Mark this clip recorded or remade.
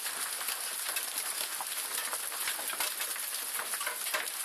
recorded